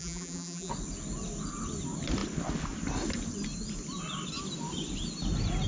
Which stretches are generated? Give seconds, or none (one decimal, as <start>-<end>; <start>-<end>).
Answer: 0.0-0.7